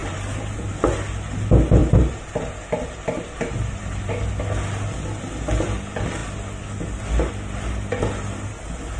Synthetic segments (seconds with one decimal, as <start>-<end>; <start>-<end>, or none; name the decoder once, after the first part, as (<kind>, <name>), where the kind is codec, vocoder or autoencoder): 0.0-0.7 (vocoder, BigVGAN v2); 1.8-4.1